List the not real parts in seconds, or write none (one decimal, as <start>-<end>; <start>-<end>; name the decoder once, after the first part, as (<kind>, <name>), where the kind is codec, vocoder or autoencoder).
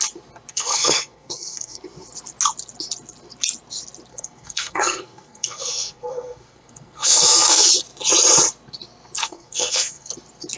0.5-1.8 (codec, SNAC); 4.1-7.7; 9.2-10.1